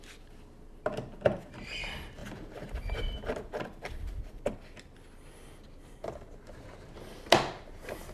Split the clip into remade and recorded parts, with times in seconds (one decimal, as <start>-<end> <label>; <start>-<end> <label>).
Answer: 0.0-2.2 recorded; 2.2-4.5 remade; 4.5-8.1 recorded